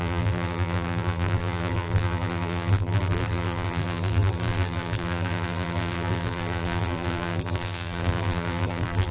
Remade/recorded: remade